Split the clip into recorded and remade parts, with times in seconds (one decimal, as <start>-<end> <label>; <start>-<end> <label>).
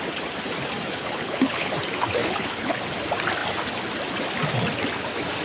0.0-0.9 recorded; 0.9-1.7 remade; 1.7-2.2 recorded; 2.2-2.8 remade; 2.8-5.4 recorded